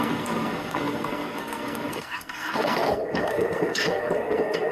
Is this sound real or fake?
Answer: fake